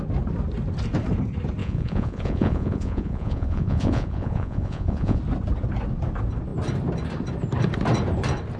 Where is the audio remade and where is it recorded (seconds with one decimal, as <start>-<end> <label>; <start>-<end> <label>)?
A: 0.0-1.6 recorded; 1.6-5.2 remade; 5.2-8.6 recorded